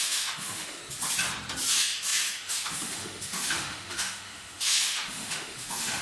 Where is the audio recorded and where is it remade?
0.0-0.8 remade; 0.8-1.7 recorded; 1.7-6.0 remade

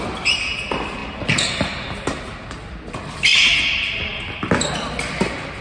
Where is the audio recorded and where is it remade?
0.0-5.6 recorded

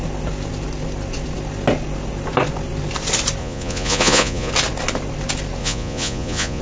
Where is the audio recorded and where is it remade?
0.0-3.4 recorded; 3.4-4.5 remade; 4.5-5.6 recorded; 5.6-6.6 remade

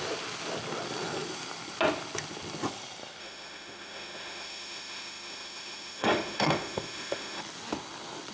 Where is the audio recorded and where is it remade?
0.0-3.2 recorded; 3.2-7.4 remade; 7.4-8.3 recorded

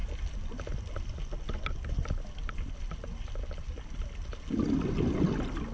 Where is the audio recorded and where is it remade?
0.0-5.7 recorded

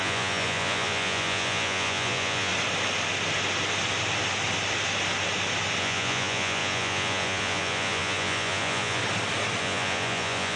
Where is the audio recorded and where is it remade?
0.0-2.5 remade; 2.5-5.8 recorded; 5.8-9.0 remade; 9.0-9.6 recorded; 9.6-10.6 remade

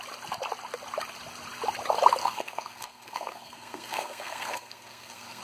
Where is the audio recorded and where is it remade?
0.0-2.2 recorded; 2.2-5.4 remade

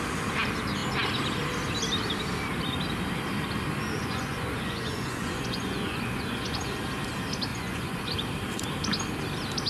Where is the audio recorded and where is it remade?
0.0-4.0 recorded; 4.0-6.8 remade; 6.8-7.5 recorded; 7.5-8.1 remade; 8.1-9.7 recorded